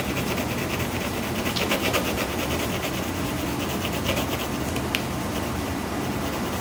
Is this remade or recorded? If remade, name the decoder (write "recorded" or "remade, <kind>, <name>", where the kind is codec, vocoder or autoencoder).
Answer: recorded